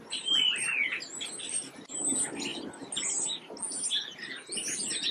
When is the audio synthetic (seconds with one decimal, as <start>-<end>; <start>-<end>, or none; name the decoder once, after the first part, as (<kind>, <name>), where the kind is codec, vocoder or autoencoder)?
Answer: none